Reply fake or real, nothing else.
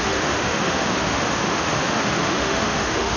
fake